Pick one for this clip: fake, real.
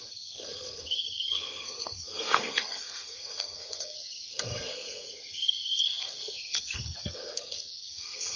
fake